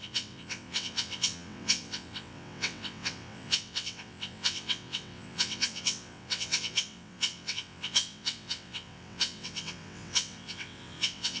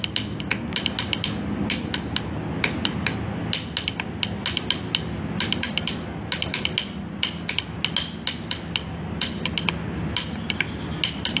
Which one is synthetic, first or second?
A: first